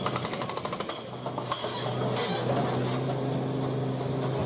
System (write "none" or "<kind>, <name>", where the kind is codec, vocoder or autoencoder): none